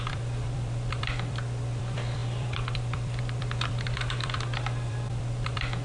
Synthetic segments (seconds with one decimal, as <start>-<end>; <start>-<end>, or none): 0.0-5.8